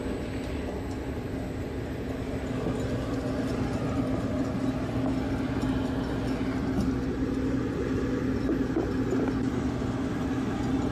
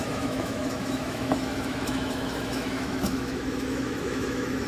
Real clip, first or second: first